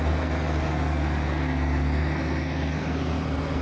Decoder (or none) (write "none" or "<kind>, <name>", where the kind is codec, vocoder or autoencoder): codec, SNAC